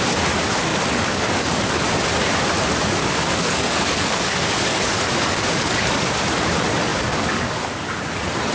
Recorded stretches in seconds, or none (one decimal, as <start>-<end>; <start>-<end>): 0.0-0.7; 1.9-3.0; 6.2-6.9; 7.8-8.5